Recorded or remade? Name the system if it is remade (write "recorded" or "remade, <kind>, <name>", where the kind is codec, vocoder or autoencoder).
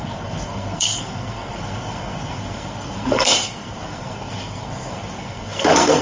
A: remade, codec, SNAC